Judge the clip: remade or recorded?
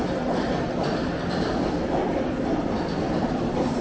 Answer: recorded